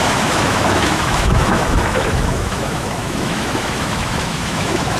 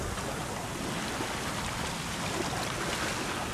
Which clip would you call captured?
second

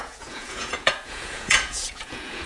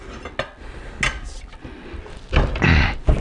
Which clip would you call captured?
second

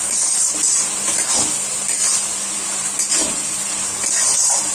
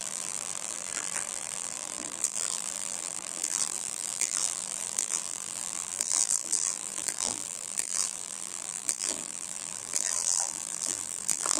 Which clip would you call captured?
first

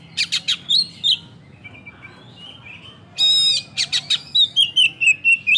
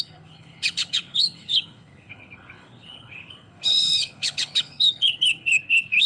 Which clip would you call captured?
first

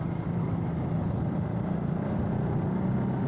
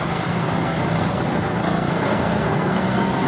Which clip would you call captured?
first